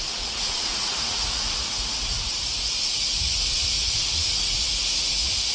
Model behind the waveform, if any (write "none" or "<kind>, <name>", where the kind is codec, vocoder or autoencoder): vocoder, Vocos